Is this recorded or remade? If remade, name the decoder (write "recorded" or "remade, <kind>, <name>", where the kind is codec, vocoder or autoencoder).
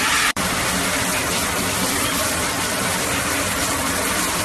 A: remade, vocoder, BigVGAN v2